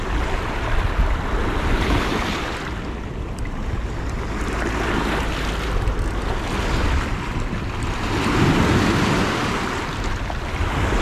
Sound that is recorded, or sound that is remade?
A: recorded